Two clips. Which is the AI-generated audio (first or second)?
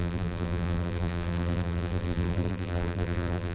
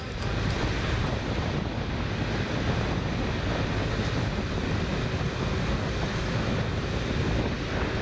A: first